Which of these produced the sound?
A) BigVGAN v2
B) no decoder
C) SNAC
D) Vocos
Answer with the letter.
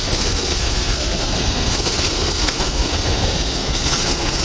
C